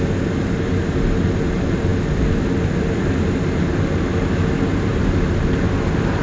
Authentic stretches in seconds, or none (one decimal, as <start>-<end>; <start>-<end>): 0.0-6.2